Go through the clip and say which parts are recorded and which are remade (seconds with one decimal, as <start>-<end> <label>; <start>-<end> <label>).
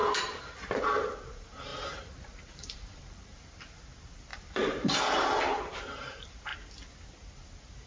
0.0-1.7 recorded; 1.7-3.3 remade; 3.3-4.3 recorded; 4.3-5.0 remade; 5.0-7.9 recorded